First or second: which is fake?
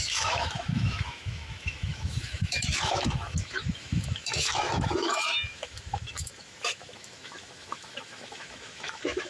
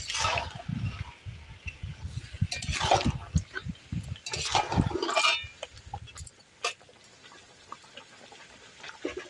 first